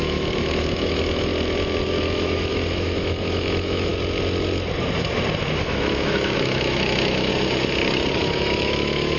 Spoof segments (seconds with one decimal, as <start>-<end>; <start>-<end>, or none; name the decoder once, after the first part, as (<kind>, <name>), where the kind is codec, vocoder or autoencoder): 0.0-1.3 (autoencoder, DAC-VAE); 2.0-3.9; 5.6-7.3; 8.2-9.2